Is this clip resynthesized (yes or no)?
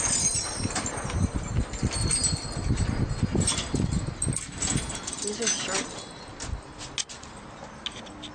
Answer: no